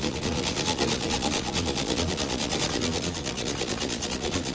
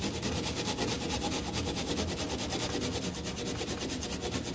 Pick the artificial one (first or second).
first